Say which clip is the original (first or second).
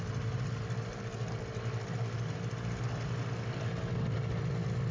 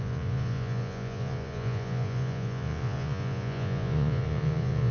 first